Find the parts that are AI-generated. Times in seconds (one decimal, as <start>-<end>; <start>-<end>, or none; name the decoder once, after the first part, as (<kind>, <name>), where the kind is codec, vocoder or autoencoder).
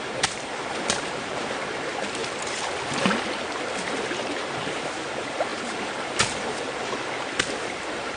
0.0-2.2 (vocoder, BigVGAN v2); 4.2-8.2